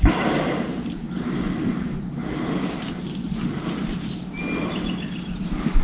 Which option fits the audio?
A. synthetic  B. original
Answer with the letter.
B